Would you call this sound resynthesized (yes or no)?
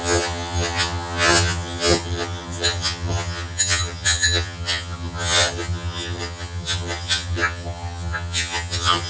yes